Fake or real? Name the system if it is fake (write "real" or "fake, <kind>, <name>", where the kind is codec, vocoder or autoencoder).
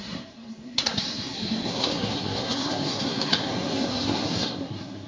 fake, codec, SNAC